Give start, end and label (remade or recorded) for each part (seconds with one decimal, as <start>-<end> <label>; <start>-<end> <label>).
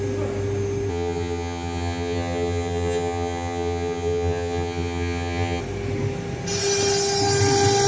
0.0-0.9 recorded; 0.9-5.6 remade; 5.6-7.9 recorded